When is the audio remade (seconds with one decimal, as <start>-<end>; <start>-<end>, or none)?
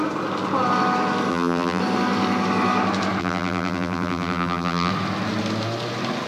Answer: 1.3-1.8; 3.2-4.9